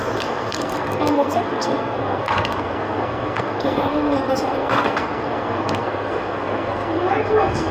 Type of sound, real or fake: fake